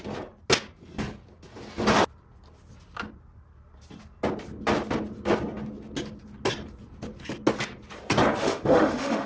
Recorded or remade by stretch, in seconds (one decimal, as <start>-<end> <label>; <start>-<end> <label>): 0.0-8.4 recorded; 8.4-9.3 remade